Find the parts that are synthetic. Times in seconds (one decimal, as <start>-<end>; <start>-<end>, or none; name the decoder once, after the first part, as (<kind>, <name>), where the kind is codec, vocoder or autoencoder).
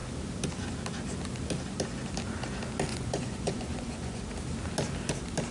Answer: 2.9-4.2 (vocoder, Vocos)